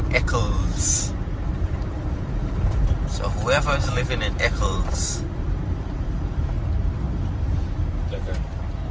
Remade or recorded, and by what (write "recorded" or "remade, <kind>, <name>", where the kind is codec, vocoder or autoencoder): remade, vocoder, BigVGAN v2